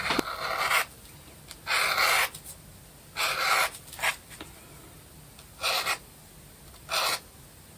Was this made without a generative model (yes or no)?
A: yes